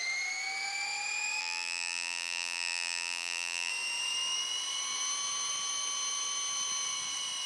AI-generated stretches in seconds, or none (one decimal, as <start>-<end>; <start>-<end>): 1.4-3.7